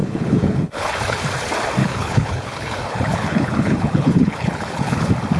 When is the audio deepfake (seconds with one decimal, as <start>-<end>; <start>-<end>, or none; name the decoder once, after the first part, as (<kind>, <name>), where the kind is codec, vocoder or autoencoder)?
0.0-1.2 (codec, HILCodec); 1.8-5.0